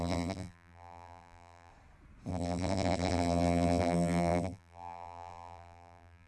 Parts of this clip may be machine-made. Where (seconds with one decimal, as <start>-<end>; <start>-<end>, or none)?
0.0-1.7; 2.3-6.3